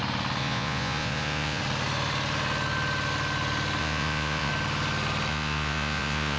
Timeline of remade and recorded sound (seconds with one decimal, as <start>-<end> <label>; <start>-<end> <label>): 0.0-0.4 recorded; 0.4-1.6 remade; 1.6-3.8 recorded; 3.8-4.5 remade; 4.5-5.3 recorded; 5.3-6.4 remade